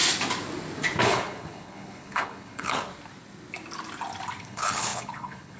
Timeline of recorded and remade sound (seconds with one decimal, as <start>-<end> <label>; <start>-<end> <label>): 0.0-1.0 recorded; 1.0-2.9 remade; 2.9-4.4 recorded; 4.4-5.6 remade